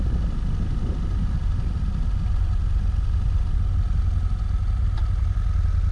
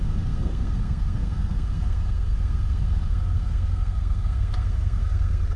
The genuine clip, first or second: first